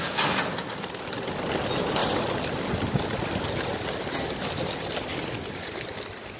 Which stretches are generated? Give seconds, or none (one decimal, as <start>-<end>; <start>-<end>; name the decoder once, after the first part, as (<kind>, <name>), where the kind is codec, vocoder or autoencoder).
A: 5.1-5.6 (vocoder, BigVGAN v2)